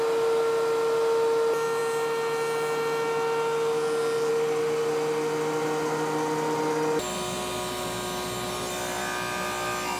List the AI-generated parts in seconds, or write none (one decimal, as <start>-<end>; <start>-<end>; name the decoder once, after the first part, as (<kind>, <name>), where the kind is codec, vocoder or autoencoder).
none